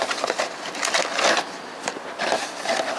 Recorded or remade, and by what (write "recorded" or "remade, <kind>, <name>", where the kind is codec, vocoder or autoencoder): recorded